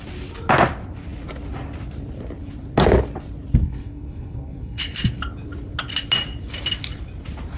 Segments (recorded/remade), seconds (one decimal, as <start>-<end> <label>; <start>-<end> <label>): 0.0-3.6 recorded; 3.6-4.8 remade; 4.8-7.6 recorded